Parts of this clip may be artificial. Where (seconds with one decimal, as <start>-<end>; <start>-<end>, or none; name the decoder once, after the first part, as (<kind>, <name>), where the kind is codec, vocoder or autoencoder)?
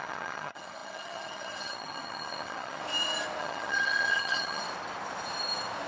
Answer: 0.0-2.8 (vocoder, HiFi-GAN); 3.4-4.6